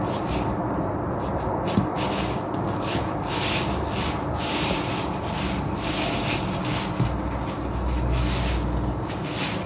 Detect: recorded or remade recorded